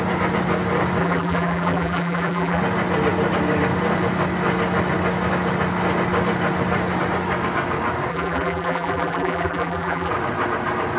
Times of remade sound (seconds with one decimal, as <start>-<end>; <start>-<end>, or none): 1.0-2.6; 8.1-10.1